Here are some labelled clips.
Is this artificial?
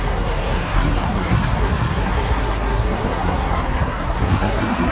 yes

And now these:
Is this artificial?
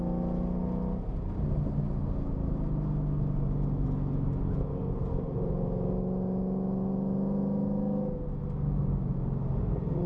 no